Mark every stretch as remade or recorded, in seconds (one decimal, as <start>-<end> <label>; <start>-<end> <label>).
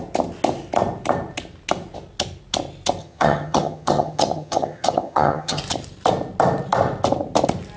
0.0-3.0 recorded; 3.0-5.6 remade; 5.6-7.8 recorded